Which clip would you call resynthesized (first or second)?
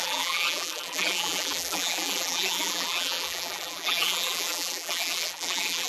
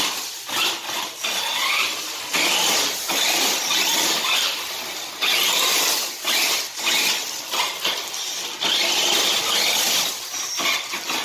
first